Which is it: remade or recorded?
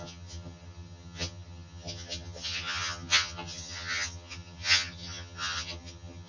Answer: remade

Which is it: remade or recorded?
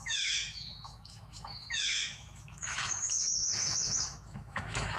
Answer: remade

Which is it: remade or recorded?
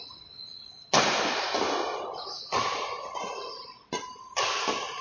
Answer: recorded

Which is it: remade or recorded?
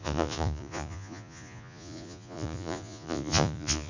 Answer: remade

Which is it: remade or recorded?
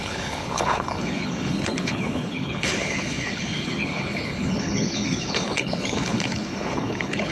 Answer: remade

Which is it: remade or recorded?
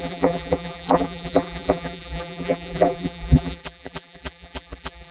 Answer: remade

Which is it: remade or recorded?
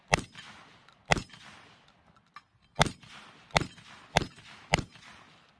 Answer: recorded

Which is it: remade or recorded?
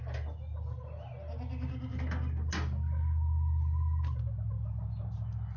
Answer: recorded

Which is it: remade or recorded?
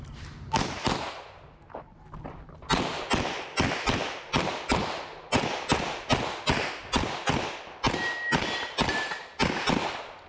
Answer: recorded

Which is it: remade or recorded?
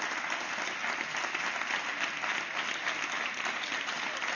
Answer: recorded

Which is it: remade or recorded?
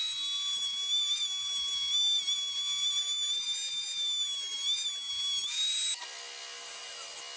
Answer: recorded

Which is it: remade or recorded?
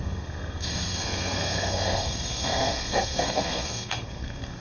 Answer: remade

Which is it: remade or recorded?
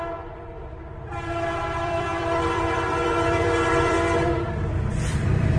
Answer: remade